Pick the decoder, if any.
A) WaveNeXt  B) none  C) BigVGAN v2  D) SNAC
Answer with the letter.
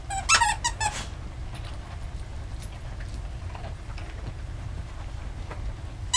B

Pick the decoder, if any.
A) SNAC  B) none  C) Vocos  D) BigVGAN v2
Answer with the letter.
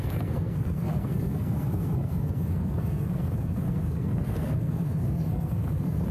A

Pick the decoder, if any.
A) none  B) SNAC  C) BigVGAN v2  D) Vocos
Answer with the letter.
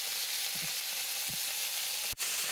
A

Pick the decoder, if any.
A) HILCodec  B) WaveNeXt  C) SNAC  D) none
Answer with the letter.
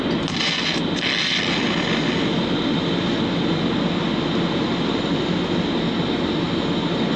D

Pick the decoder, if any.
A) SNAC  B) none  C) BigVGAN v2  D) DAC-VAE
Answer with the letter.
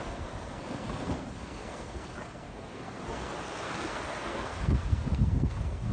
A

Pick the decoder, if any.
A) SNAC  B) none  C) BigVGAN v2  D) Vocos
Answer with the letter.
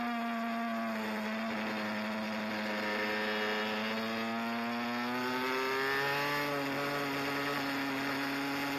B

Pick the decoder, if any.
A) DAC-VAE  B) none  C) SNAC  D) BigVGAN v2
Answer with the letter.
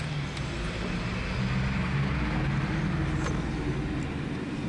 B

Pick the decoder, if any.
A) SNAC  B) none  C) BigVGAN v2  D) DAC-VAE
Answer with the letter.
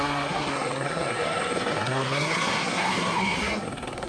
A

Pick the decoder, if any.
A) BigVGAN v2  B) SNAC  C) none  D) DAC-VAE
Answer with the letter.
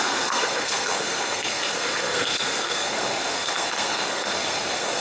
B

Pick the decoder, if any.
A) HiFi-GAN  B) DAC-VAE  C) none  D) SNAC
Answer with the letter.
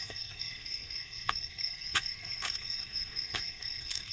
D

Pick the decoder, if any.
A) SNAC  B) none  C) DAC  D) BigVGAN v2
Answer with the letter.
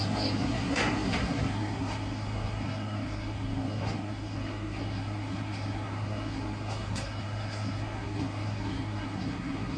A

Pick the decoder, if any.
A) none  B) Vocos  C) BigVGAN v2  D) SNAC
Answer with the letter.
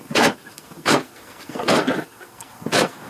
D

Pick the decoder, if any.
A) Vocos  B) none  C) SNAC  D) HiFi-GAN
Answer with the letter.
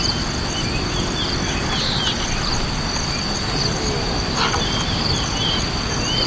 B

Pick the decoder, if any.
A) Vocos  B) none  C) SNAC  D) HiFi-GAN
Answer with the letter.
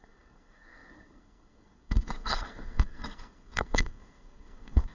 C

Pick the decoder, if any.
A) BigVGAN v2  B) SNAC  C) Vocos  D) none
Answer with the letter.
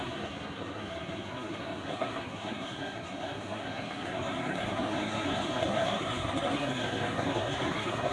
B